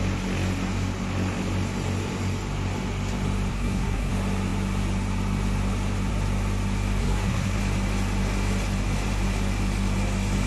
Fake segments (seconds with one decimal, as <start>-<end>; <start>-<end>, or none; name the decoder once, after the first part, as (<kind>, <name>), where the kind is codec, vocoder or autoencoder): 3.5-4.1 (codec, SNAC); 7.0-7.6